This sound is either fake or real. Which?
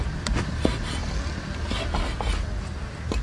real